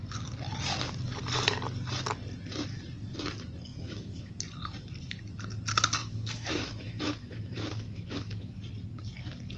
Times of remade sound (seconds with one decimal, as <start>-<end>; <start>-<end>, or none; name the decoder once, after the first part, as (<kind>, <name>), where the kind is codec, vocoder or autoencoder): 3.7-4.3 (autoencoder, DAC-VAE); 6.0-8.6